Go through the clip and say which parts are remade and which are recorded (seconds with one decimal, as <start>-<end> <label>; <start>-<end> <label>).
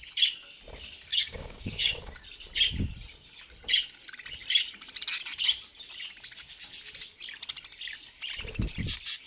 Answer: 0.0-1.1 recorded; 1.1-2.1 remade; 2.1-9.3 recorded